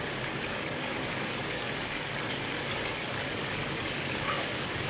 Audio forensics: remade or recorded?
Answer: remade